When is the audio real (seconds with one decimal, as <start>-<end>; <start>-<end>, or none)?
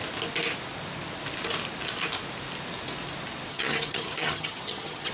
0.0-3.5